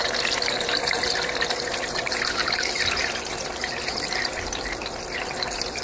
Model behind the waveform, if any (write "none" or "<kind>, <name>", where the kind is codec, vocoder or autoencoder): vocoder, BigVGAN v2